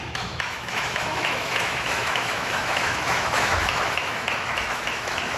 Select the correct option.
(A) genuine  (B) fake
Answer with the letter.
B